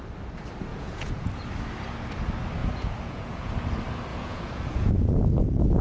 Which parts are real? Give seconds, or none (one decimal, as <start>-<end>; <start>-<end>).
0.0-0.7; 1.3-2.6; 3.5-4.1